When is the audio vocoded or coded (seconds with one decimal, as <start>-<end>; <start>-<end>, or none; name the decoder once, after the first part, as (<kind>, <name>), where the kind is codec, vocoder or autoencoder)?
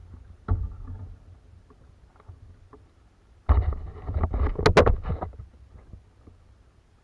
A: none